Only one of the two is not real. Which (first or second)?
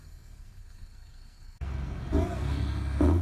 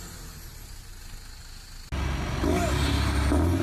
first